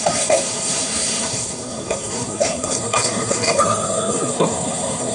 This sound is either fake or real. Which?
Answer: fake